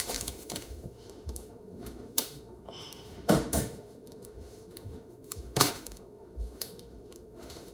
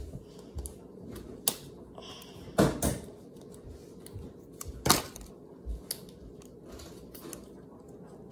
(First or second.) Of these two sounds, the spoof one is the first